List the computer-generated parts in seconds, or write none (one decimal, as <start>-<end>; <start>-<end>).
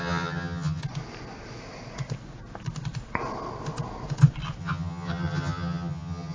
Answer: 0.0-0.8; 4.6-6.3